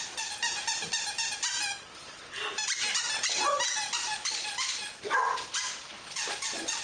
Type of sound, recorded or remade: recorded